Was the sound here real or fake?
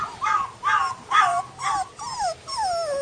real